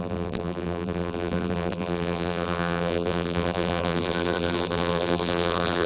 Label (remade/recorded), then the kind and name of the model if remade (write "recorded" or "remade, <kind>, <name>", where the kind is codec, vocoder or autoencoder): remade, vocoder, BigVGAN v2